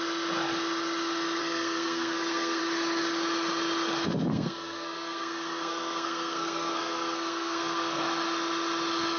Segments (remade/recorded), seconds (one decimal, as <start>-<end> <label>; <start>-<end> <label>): 0.0-1.4 recorded; 1.4-2.6 remade; 2.6-4.3 recorded; 4.3-8.0 remade; 8.0-9.2 recorded